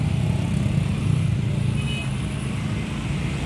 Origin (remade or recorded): recorded